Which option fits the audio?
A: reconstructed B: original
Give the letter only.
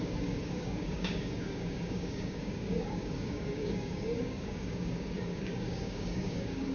A